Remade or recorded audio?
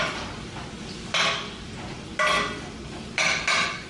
recorded